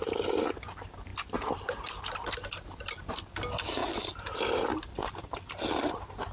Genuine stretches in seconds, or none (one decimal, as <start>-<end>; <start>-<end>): 0.0-6.3